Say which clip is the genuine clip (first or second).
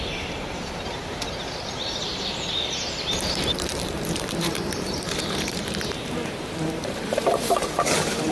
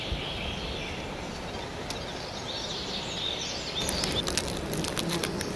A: second